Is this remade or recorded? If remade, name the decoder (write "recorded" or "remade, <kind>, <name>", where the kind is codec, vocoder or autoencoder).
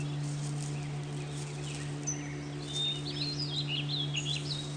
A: recorded